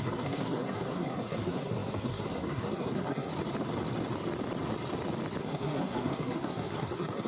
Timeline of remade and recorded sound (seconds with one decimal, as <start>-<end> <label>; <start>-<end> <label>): 0.0-3.3 remade; 3.3-5.4 recorded; 5.4-7.3 remade